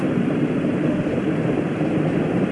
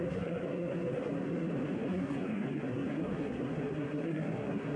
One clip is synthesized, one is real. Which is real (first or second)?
first